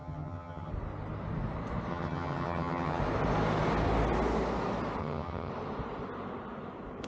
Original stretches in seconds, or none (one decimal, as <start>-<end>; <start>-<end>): 0.7-1.9; 3.0-5.0; 5.5-7.1